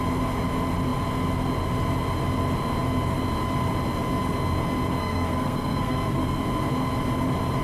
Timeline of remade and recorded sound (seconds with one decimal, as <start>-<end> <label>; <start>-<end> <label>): 0.0-5.0 recorded; 5.0-6.4 remade; 6.4-7.6 recorded